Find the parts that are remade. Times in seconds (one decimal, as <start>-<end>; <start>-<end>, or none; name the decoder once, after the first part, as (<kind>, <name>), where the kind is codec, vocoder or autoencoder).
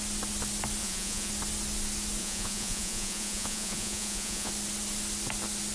0.8-1.3 (vocoder, Vocos); 2.2-4.5